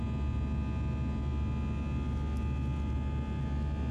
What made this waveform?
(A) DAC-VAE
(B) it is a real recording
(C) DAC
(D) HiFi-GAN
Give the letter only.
B